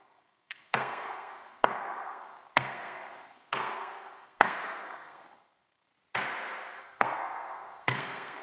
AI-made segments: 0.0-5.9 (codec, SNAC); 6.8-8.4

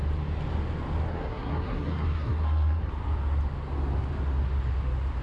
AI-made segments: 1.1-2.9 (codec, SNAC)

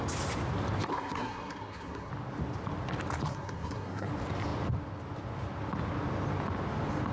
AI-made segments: 0.9-2.1 (codec, SNAC); 3.3-4.1

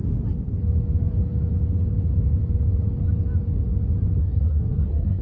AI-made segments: 4.2-5.2 (codec, SNAC)